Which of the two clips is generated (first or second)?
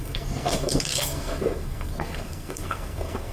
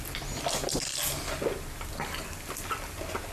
first